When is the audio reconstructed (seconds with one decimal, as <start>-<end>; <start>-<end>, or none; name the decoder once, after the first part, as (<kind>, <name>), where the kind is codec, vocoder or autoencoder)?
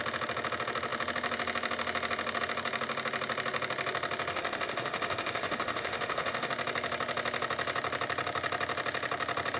4.3-6.5 (autoencoder, DAC-VAE)